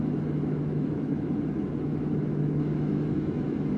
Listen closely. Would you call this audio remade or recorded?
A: remade